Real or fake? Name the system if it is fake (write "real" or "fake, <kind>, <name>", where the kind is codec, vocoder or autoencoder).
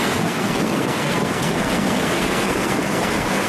fake, codec, SNAC